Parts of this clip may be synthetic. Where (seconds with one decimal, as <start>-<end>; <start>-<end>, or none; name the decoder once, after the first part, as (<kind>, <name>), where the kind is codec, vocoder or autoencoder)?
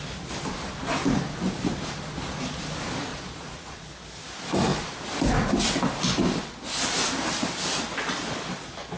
3.1-3.9 (vocoder, Vocos)